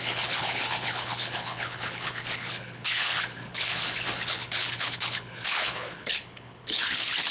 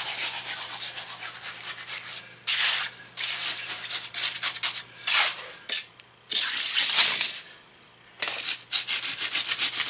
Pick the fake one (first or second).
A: first